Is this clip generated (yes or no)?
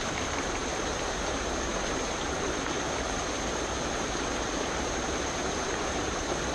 yes